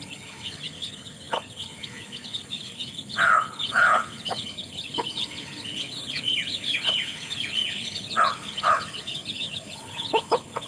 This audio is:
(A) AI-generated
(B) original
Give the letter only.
A